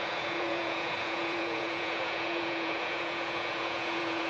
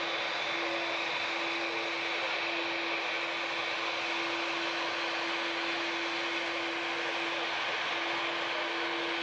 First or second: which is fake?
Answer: first